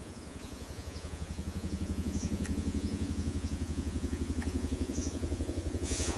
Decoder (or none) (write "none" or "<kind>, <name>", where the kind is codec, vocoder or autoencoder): vocoder, Vocos